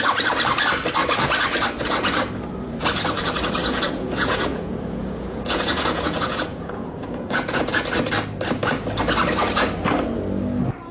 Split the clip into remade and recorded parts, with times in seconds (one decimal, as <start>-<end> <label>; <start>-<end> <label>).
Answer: 0.0-3.6 recorded; 3.6-7.8 remade; 7.8-10.9 recorded